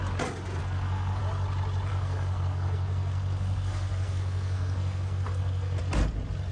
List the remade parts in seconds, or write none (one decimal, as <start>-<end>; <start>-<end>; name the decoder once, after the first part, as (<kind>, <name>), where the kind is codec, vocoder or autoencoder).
0.6-1.2 (codec, SNAC); 1.9-5.8